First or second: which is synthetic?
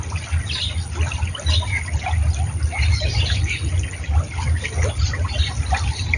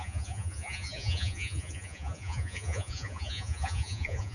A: second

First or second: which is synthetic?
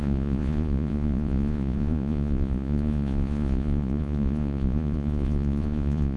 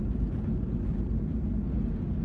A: first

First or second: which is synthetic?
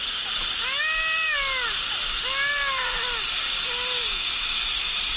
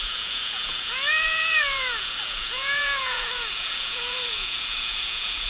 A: second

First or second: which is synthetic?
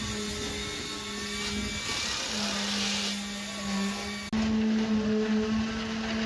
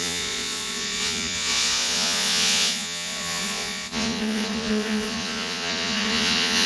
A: second